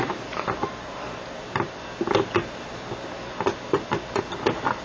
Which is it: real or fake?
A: real